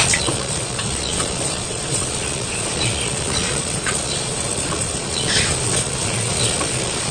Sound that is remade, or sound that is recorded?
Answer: remade